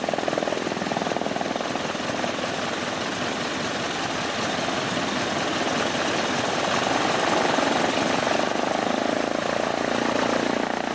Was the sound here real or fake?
real